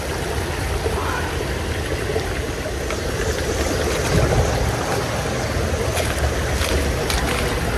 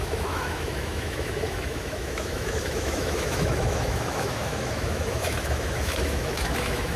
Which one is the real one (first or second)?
first